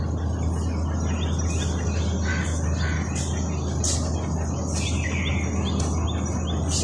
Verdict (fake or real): real